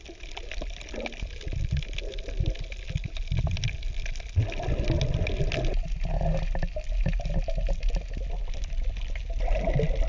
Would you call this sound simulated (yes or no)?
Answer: no